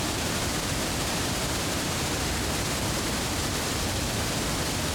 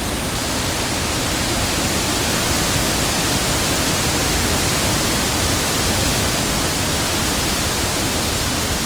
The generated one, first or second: first